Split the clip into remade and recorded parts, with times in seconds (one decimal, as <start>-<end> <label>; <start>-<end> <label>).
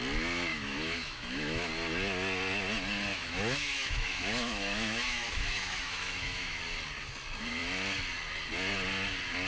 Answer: 0.0-0.5 recorded; 0.5-1.7 remade; 1.7-3.1 recorded; 3.1-6.6 remade; 6.6-9.5 recorded